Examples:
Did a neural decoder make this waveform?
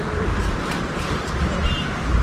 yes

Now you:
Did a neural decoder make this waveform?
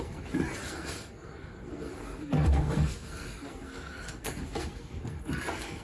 yes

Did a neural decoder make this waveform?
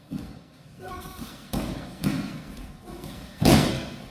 yes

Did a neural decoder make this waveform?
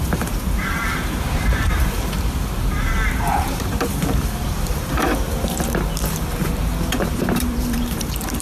yes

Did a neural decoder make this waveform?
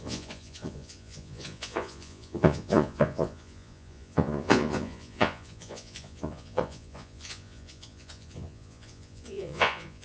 yes